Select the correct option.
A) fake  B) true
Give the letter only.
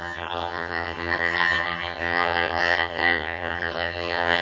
A